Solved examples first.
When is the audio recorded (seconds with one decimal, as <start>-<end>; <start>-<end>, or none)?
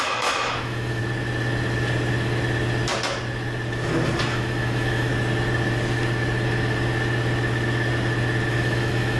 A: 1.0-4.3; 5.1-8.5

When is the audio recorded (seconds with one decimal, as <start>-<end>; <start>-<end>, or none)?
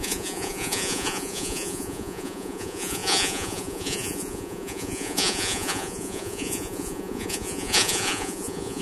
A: none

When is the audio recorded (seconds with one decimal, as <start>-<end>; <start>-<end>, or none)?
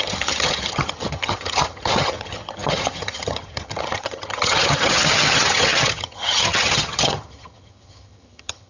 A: none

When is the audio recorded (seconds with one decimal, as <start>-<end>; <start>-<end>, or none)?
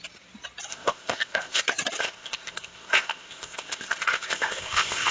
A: 0.0-0.7; 1.6-2.0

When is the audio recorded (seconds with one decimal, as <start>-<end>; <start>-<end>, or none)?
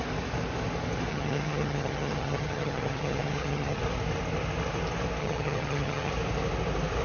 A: 0.0-1.1; 3.8-5.2; 6.1-7.0